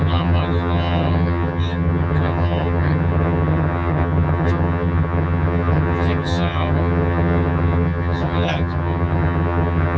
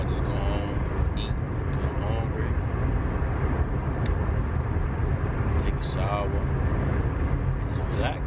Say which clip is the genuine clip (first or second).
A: second